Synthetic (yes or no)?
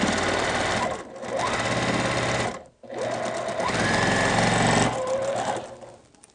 no